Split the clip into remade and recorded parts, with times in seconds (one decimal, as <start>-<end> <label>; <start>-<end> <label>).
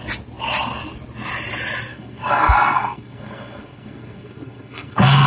0.0-1.9 recorded; 1.9-5.3 remade